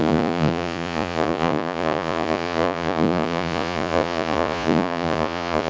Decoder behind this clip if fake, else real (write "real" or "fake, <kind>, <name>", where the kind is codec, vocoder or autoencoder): fake, vocoder, Vocos